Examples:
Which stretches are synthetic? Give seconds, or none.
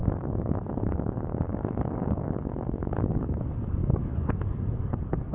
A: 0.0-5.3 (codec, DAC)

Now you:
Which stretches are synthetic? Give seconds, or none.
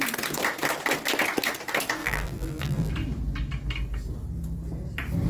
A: 2.0-2.9 (vocoder, BigVGAN v2)